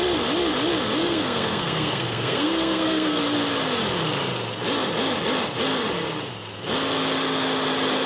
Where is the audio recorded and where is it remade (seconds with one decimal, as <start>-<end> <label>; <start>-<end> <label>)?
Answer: 0.0-1.0 recorded; 1.0-3.2 remade; 3.2-8.1 recorded